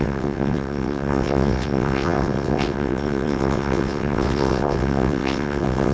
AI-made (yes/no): yes